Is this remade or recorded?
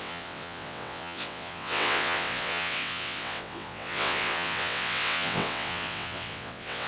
remade